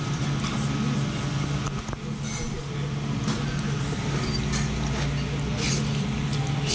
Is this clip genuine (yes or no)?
yes